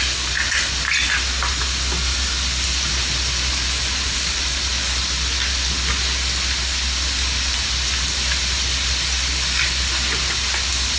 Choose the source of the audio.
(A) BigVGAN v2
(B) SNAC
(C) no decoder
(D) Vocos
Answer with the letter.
C